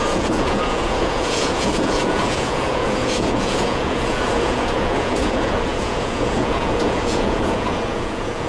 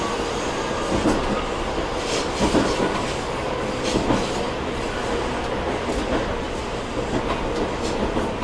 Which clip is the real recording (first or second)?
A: second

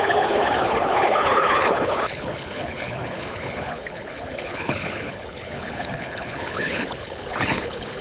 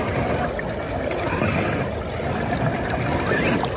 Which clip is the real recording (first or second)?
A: second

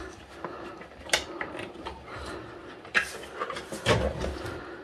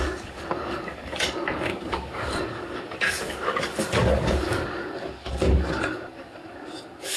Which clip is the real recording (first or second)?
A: first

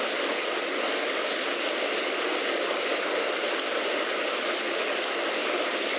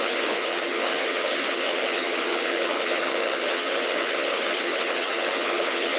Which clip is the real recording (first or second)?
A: first